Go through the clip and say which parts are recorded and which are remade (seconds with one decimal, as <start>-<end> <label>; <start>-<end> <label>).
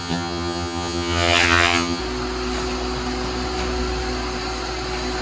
0.0-2.0 remade; 2.0-5.2 recorded